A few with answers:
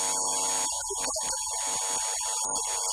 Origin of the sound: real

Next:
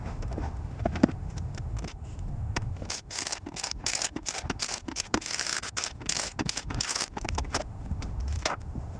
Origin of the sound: fake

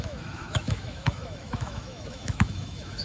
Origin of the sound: fake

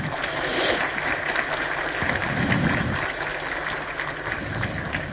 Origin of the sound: real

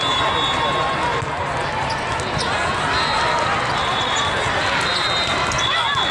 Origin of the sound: real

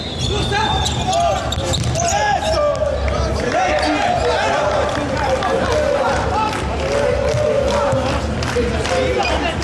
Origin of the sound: real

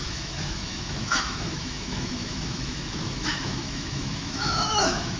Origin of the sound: fake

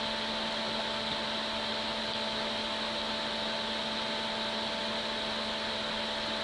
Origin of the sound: real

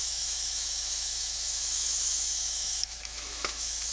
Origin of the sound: fake